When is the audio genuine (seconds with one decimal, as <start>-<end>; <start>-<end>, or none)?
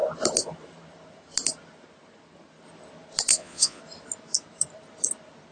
0.0-3.3; 3.8-5.5